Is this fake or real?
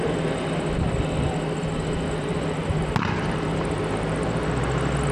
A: real